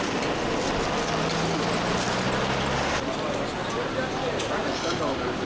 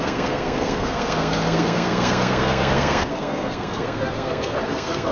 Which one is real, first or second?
first